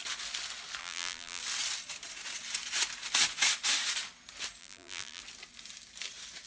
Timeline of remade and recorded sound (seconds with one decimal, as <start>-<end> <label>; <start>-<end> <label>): 0.0-0.8 recorded; 0.8-1.4 remade; 1.4-4.6 recorded; 4.6-5.2 remade; 5.2-6.5 recorded